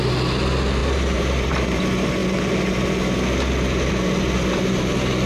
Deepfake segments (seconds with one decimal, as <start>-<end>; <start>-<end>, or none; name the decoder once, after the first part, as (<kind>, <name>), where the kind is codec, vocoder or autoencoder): 0.8-1.8 (vocoder, BigVGAN v2)